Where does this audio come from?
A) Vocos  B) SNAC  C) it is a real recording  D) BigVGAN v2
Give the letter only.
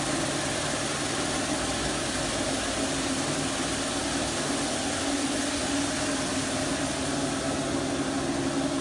C